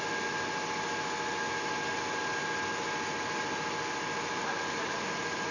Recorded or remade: recorded